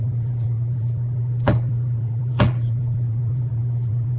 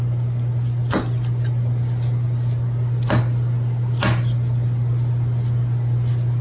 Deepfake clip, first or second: first